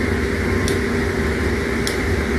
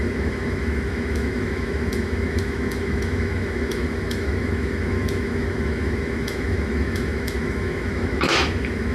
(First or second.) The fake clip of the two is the second